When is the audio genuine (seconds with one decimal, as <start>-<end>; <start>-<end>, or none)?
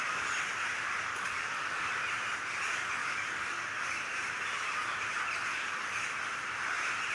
0.0-1.1; 1.9-3.0; 3.8-5.5; 6.0-7.1